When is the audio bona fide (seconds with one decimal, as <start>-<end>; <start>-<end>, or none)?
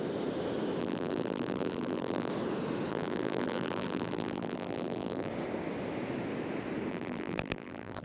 0.0-0.8; 2.3-2.9; 5.3-6.9